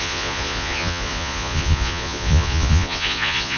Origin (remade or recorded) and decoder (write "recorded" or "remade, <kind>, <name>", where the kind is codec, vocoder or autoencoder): remade, vocoder, Vocos